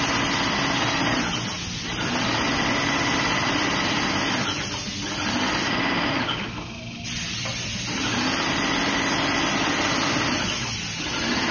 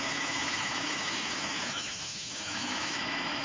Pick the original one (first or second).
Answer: first